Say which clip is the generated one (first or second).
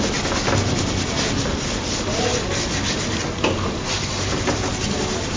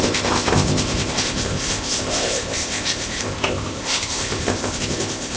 second